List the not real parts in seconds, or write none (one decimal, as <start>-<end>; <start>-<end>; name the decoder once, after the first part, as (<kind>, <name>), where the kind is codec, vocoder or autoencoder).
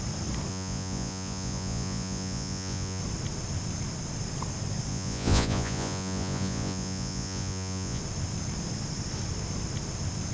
0.5-3.0 (vocoder, Vocos); 4.9-8.0